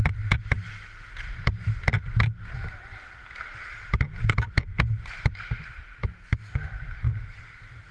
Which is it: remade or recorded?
recorded